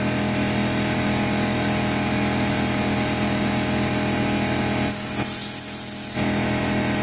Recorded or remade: recorded